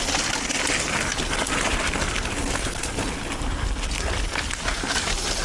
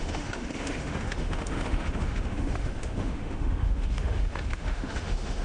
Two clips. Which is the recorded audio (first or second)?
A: first